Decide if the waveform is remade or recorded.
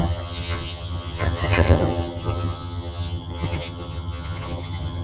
remade